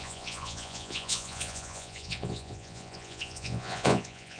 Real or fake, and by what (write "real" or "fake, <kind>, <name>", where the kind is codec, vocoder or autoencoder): fake, vocoder, Vocos